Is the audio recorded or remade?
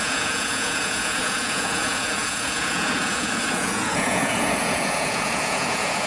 remade